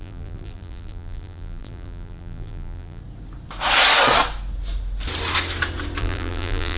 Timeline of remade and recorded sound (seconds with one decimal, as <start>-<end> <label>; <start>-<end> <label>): 0.0-3.0 remade; 3.0-6.0 recorded; 6.0-6.8 remade